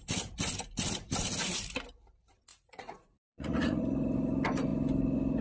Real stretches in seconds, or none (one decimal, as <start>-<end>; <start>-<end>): 0.0-2.5; 3.8-5.4